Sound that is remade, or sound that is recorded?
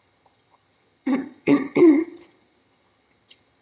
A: remade